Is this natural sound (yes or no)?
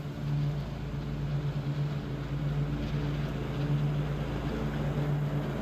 yes